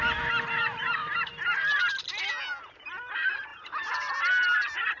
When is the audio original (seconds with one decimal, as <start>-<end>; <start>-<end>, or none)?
1.3-2.6